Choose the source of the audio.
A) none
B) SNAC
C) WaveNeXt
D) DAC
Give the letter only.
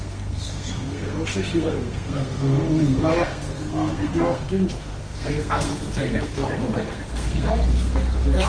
B